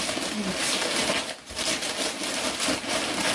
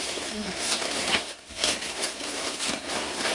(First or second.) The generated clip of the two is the second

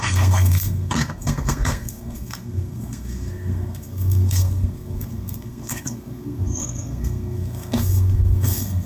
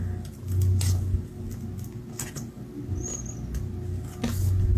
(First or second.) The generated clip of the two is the first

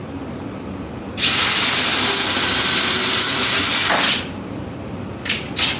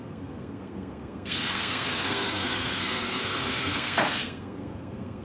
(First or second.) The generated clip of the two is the second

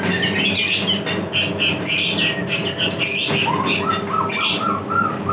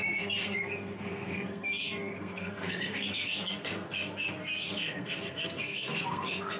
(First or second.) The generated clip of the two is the second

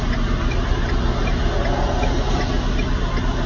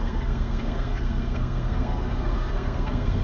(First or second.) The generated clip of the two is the second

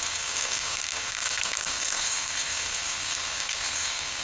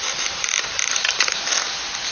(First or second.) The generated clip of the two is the first